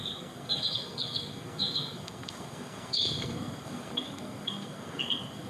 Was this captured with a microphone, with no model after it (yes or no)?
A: no